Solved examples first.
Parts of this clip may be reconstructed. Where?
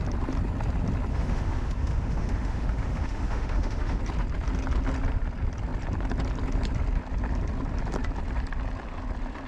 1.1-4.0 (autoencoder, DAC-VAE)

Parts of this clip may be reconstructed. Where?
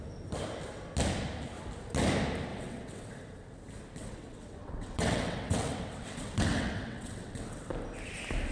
2.5-3.1 (vocoder, WaveNeXt); 4.0-7.7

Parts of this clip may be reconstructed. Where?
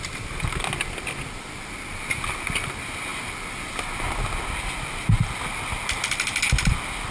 none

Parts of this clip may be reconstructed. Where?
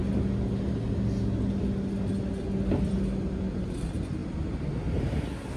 4.2-4.7 (vocoder, BigVGAN v2)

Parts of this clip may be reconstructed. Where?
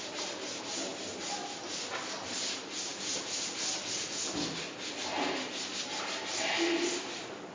none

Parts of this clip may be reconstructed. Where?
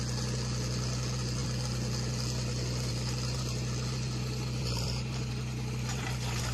none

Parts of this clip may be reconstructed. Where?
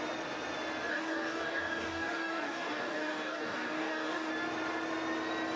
0.9-4.3 (codec, DAC)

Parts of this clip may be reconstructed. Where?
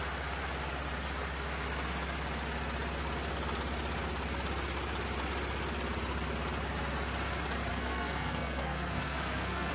7.7-9.7 (codec, SNAC)